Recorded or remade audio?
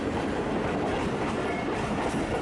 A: remade